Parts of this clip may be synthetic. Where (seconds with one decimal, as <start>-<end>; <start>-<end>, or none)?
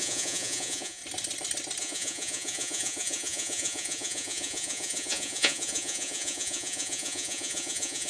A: 0.0-1.0; 1.8-8.1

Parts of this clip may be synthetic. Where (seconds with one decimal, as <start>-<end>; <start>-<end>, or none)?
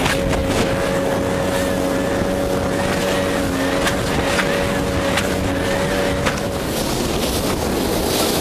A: none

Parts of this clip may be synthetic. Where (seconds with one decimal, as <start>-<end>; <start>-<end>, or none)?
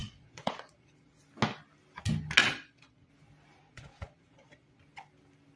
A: 0.0-1.2; 2.4-3.1; 3.6-4.8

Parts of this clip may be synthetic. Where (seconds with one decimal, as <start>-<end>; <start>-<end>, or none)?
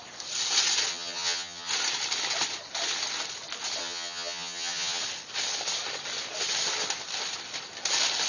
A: 0.9-1.7; 3.8-5.0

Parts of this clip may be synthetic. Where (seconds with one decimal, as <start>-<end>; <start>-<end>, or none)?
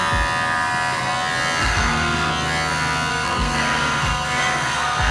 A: 1.6-2.3; 3.1-5.1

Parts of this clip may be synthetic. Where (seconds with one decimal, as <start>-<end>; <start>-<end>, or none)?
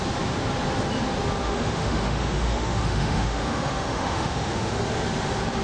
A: 1.4-4.8